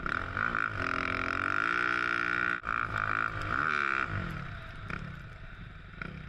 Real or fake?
real